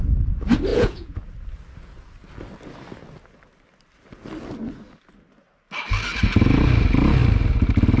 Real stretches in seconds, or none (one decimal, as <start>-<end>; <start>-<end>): 0.0-0.7; 1.3-8.0